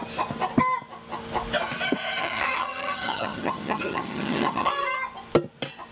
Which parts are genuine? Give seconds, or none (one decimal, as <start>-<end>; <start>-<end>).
0.0-2.2; 4.7-5.9